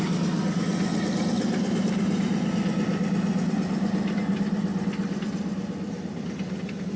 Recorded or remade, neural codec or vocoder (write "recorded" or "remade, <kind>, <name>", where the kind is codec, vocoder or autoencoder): recorded